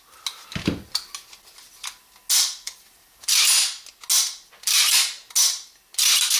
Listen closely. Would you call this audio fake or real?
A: real